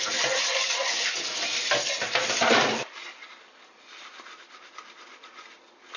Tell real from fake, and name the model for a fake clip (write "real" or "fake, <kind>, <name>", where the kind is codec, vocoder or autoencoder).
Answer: real